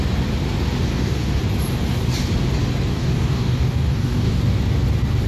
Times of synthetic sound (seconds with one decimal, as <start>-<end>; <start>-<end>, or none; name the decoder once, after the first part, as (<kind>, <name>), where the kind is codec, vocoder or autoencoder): 0.9-1.4 (codec, DAC); 2.9-4.4